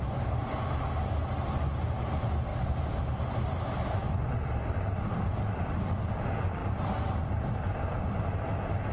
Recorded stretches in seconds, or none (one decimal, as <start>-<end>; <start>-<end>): 0.0-8.9